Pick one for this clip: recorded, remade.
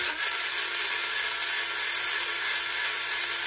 recorded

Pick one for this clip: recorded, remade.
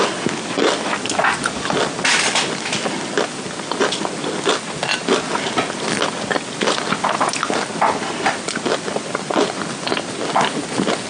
recorded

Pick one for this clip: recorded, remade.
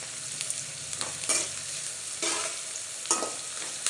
recorded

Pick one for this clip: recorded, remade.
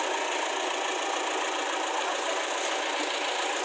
recorded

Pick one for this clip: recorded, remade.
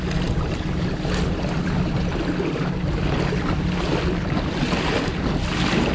recorded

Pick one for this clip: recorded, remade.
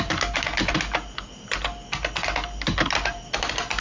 recorded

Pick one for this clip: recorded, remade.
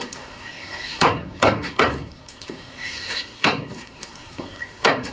remade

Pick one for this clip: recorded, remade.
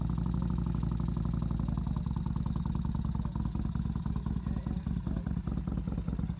recorded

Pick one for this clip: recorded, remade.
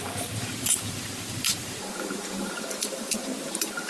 remade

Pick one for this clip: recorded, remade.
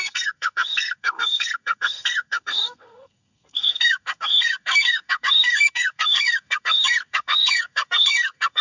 remade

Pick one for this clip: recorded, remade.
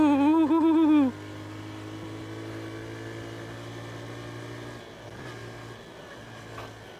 recorded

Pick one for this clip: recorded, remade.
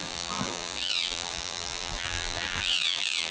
remade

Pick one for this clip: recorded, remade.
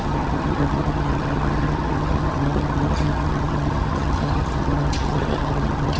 remade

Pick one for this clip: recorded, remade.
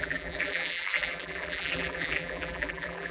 remade